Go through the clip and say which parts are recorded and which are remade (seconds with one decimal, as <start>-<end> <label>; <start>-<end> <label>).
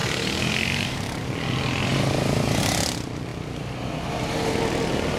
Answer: 0.0-1.3 remade; 1.3-5.2 recorded